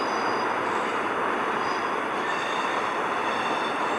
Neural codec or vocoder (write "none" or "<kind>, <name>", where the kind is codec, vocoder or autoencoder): none